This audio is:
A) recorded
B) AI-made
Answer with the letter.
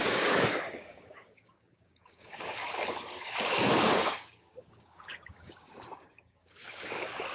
B